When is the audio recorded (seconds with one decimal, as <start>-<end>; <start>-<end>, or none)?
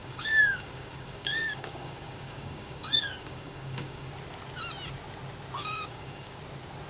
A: 4.1-5.6; 6.4-6.9